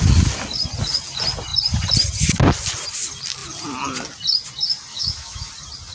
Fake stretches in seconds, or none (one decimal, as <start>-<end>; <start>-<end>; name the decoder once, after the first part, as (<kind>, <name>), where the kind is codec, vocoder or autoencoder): 4.9-5.5 (autoencoder, DAC-VAE)